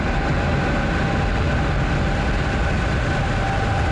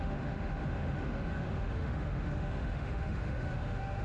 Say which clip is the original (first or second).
first